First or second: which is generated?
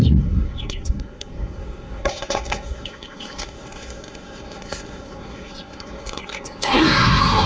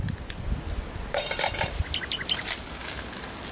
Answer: first